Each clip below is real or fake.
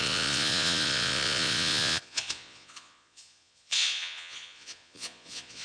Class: fake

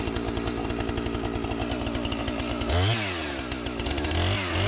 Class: real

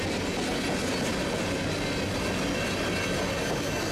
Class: real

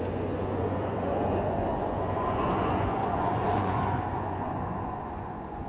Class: fake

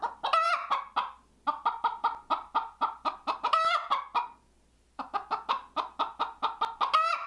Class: real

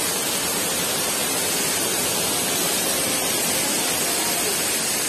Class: real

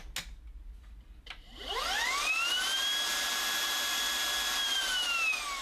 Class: real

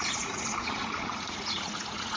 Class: fake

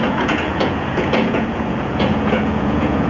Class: fake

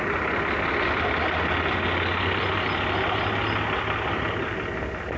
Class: real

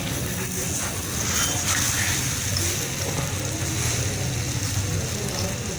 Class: real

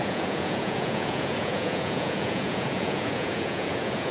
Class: fake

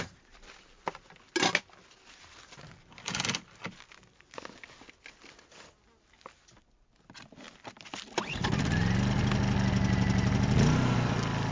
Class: real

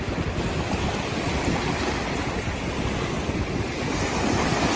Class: real